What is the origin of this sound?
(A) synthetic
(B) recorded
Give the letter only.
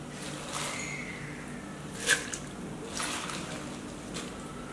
B